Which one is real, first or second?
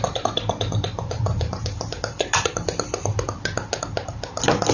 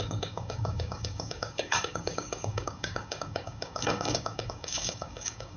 first